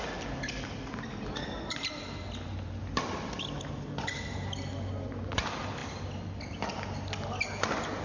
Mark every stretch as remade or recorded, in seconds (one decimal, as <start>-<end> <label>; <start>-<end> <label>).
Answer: 0.0-8.0 recorded